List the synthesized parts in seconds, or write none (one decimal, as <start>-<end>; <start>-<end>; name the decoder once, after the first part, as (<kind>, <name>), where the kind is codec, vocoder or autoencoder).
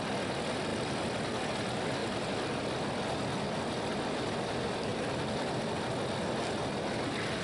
none